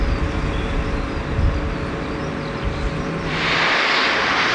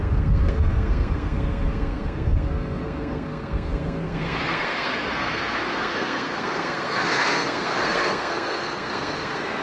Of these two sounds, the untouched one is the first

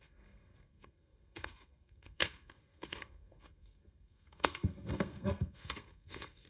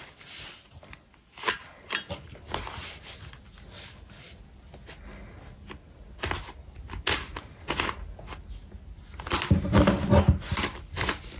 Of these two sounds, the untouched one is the second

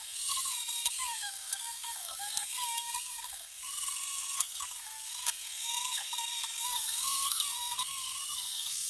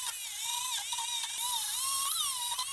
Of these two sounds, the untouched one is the second